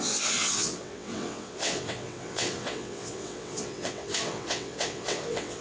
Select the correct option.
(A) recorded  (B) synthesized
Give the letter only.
B